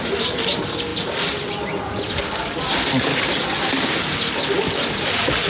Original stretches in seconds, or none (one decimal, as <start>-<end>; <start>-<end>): 0.0-5.5